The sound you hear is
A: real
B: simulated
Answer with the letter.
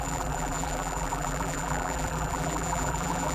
B